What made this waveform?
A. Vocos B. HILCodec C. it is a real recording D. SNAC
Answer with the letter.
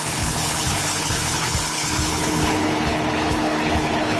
B